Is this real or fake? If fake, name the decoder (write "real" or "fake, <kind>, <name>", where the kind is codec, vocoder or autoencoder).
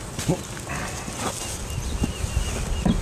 real